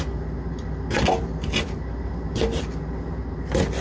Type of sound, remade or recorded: recorded